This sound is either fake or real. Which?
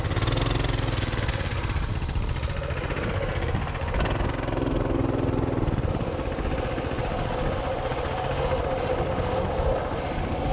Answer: real